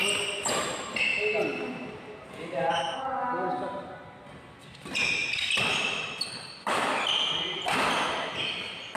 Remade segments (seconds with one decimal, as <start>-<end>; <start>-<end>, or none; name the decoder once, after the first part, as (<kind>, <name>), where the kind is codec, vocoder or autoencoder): none